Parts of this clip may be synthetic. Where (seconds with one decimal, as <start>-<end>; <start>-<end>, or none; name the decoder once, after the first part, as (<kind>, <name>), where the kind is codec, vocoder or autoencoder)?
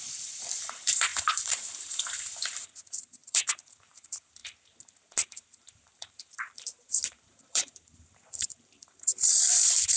0.0-4.4 (vocoder, BigVGAN v2); 5.2-10.0